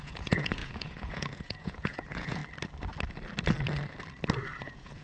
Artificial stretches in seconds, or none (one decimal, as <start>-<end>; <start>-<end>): 0.0-2.4; 4.6-5.0